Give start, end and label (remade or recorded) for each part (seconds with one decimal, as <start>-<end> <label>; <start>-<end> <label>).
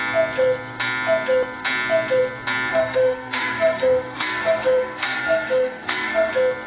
0.0-2.7 recorded; 2.7-6.3 remade; 6.3-6.7 recorded